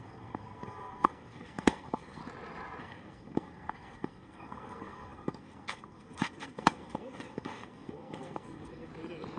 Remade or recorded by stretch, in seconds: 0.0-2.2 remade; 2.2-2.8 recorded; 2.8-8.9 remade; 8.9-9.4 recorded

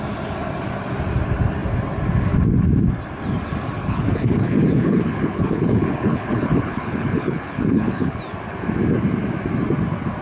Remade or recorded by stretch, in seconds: 0.0-3.8 recorded; 3.8-8.2 remade; 8.2-10.2 recorded

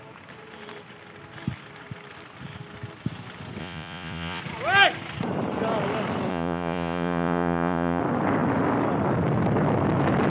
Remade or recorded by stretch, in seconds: 0.0-3.6 recorded; 3.6-4.4 remade; 4.4-6.3 recorded; 6.3-8.0 remade; 8.0-10.3 recorded

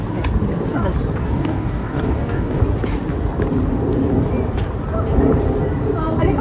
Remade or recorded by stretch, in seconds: 0.0-1.2 recorded; 1.2-2.6 remade; 2.6-6.4 recorded

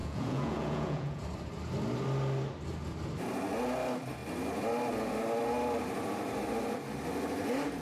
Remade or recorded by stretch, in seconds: 0.0-1.2 remade; 1.2-7.8 recorded

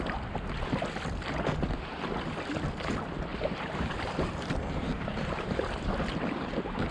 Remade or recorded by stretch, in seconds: 0.0-3.3 recorded; 3.3-5.9 remade; 5.9-6.9 recorded